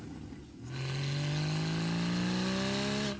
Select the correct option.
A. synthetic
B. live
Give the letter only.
B